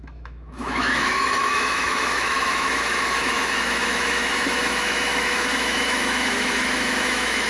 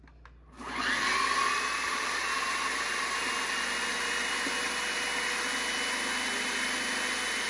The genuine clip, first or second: second